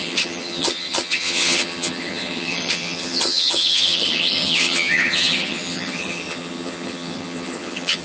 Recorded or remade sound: remade